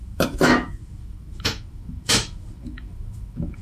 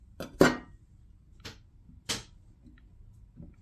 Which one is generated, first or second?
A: first